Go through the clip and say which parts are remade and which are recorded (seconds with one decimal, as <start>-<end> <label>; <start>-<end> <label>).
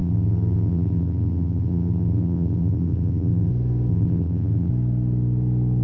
0.0-3.5 remade; 3.5-3.9 recorded; 3.9-4.7 remade; 4.7-5.8 recorded